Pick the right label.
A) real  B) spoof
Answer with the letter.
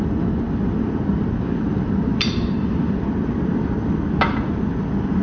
A